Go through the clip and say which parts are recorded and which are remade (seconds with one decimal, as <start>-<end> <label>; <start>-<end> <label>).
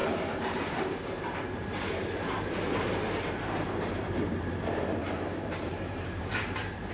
0.0-6.9 remade